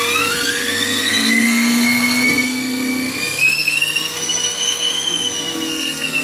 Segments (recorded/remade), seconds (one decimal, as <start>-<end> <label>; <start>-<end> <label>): 0.0-6.2 remade